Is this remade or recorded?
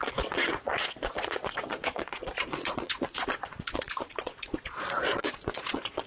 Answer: remade